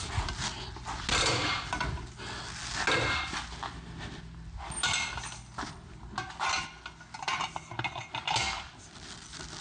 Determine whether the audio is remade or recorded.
recorded